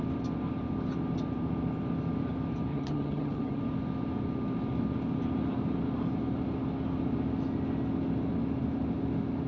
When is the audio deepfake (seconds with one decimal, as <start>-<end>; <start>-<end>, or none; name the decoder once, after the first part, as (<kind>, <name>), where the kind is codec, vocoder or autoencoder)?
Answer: 2.7-3.6 (vocoder, HiFi-GAN)